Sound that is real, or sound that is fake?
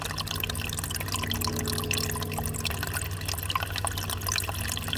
real